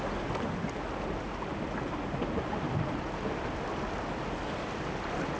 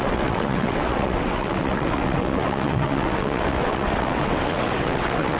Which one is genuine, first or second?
first